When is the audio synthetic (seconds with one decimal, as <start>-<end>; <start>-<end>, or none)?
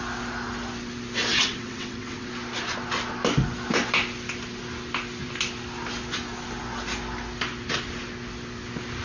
1.3-2.3